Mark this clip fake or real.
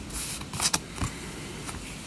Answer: real